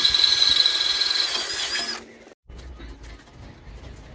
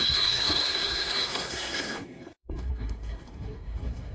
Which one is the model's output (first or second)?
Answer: second